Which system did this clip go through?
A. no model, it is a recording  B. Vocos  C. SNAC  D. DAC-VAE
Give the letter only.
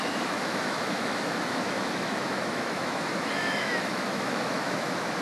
D